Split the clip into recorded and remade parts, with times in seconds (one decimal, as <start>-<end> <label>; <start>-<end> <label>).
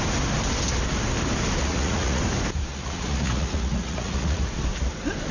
0.0-1.6 recorded; 1.6-2.2 remade; 2.2-2.7 recorded; 2.7-4.4 remade; 4.4-5.3 recorded